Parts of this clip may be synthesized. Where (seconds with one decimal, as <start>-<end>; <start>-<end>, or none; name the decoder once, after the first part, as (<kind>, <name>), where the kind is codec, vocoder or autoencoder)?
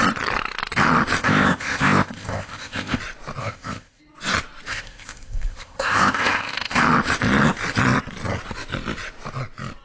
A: 1.2-3.0 (codec, ZipCodec); 3.4-4.0; 4.7-6.8